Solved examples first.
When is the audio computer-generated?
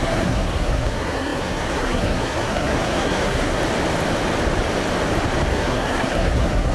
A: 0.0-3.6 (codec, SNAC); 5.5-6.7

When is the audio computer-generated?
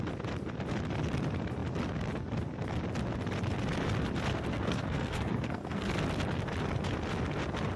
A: 4.3-6.0 (codec, SNAC)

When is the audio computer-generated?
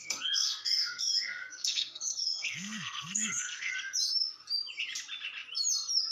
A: 0.0-3.7 (codec, SNAC)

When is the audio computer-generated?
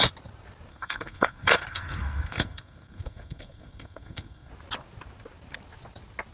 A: 0.7-4.5 (codec, SNAC)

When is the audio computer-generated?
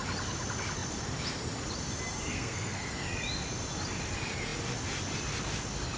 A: 2.3-2.9 (codec, SNAC)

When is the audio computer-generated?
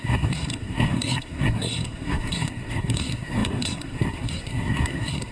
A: 0.0-5.3 (codec, SNAC)